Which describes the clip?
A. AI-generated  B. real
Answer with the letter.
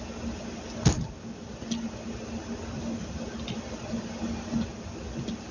B